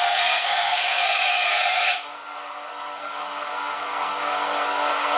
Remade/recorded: remade